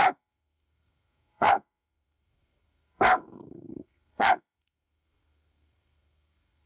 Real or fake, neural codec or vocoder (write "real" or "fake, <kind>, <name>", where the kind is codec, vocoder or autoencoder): fake, codec, SNAC